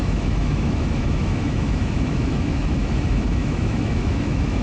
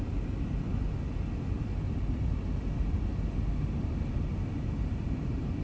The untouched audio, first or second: second